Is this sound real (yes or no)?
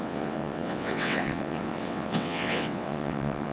no